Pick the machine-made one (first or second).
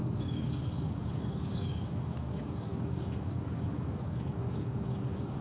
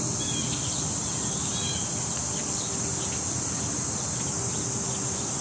first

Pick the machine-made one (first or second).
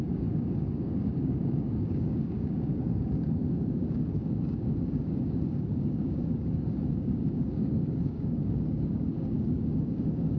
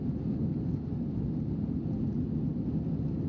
first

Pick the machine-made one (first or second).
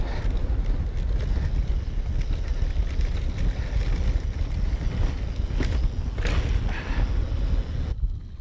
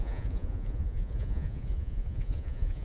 second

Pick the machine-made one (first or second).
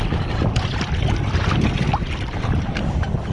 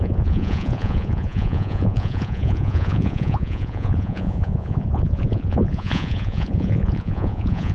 second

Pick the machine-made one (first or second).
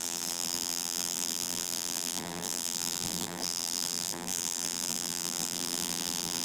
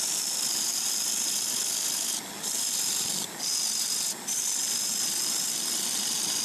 first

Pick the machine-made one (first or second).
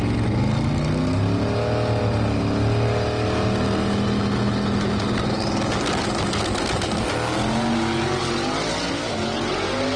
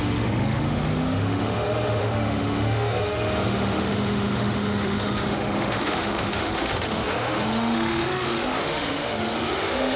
second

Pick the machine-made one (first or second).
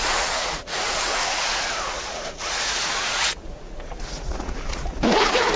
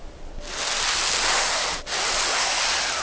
first